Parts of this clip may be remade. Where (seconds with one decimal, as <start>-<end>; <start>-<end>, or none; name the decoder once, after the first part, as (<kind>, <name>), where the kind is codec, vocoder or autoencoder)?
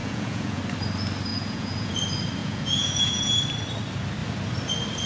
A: 0.0-0.6 (vocoder, Vocos); 1.3-1.9; 2.4-3.4